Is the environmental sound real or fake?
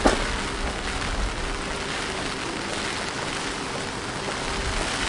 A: real